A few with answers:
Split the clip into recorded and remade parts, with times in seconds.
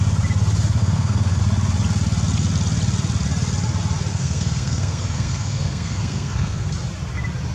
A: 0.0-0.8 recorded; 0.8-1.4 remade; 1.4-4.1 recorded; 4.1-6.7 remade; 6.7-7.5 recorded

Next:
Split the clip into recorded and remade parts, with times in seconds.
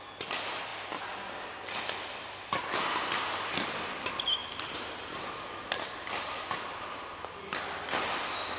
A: 0.0-2.2 recorded; 2.2-3.2 remade; 3.2-4.4 recorded; 4.4-5.3 remade; 5.3-8.6 recorded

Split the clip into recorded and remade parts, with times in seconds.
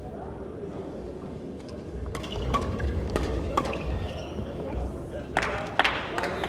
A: 0.0-0.8 recorded; 0.8-4.7 remade; 4.7-6.5 recorded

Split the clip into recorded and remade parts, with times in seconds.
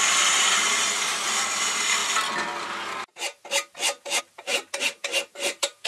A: 0.0-2.0 remade; 2.0-4.2 recorded; 4.2-5.9 remade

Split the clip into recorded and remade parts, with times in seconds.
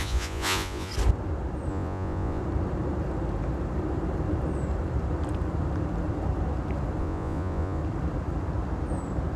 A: 0.0-0.9 remade; 0.9-1.7 recorded; 1.7-2.4 remade; 2.4-7.0 recorded; 7.0-7.8 remade; 7.8-9.4 recorded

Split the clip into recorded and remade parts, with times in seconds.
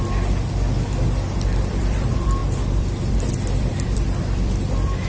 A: 0.0-1.7 recorded; 1.7-5.1 remade